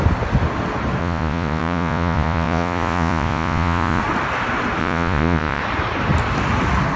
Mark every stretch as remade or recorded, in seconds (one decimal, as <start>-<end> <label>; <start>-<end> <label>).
0.0-1.0 recorded; 1.0-4.0 remade; 4.0-4.8 recorded; 4.8-5.6 remade; 5.6-7.0 recorded